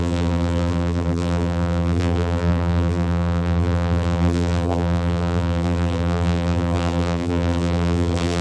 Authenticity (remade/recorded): remade